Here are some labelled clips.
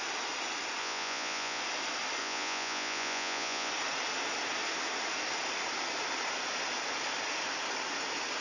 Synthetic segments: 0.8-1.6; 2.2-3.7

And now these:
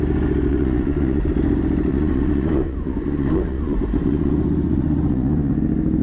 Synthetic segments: 0.5-1.3; 1.9-5.5